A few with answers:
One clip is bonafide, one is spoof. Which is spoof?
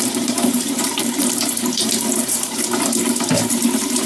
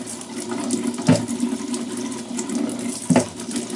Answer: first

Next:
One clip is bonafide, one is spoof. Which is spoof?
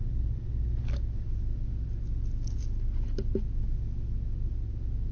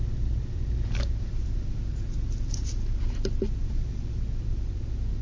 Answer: second